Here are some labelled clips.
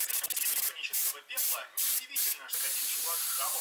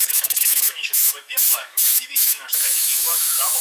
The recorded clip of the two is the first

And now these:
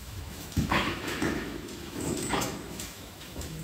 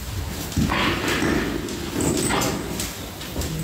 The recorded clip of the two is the second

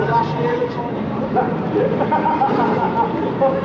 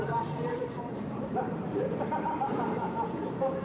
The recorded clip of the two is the first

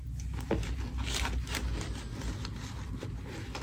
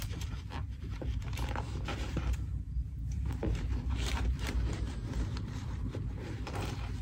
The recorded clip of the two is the first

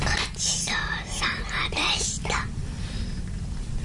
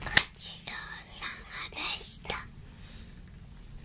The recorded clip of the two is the second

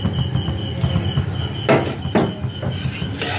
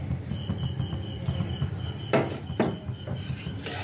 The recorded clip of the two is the first